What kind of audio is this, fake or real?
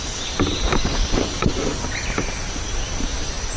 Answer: real